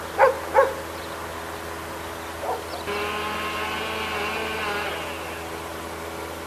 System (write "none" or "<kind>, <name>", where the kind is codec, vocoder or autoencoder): vocoder, BigVGAN v2